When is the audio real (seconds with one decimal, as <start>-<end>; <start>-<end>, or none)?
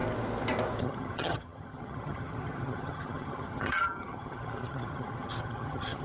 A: 0.0-0.8